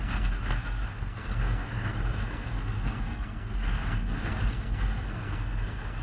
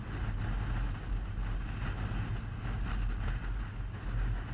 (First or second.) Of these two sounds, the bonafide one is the second